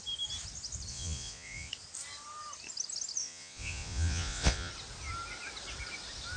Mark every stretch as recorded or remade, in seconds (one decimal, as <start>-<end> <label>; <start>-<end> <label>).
0.0-0.9 recorded; 0.9-1.7 remade; 1.7-3.2 recorded; 3.2-4.7 remade; 4.7-6.4 recorded